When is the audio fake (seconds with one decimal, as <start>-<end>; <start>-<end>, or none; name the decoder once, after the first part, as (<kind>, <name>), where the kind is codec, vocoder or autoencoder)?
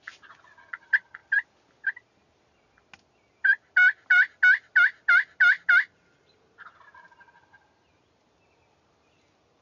none